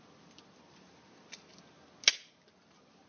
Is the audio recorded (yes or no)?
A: yes